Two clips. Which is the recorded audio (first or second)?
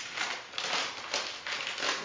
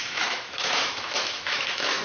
first